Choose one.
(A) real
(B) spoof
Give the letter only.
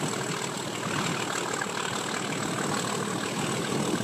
A